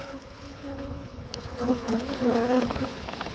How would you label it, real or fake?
fake